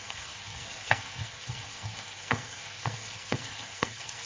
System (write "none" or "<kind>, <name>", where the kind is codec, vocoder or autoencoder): codec, SNAC